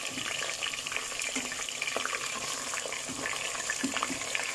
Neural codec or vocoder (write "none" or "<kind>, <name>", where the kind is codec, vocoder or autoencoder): none